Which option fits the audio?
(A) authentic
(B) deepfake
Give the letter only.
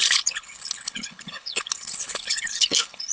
B